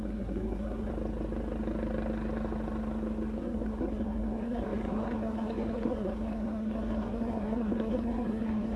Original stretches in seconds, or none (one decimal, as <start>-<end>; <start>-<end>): 0.9-3.4